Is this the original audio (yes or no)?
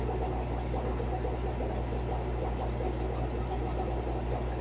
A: yes